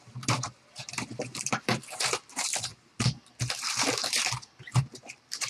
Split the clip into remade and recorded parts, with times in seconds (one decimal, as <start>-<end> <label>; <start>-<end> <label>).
0.0-2.7 remade; 2.7-3.5 recorded; 3.5-4.0 remade; 4.0-4.7 recorded; 4.7-5.5 remade